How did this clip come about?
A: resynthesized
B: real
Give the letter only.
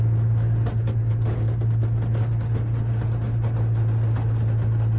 B